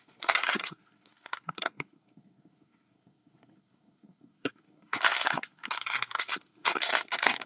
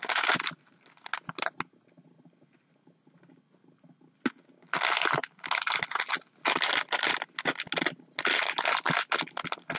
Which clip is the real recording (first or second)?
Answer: second